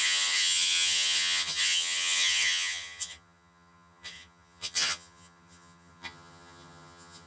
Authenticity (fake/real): fake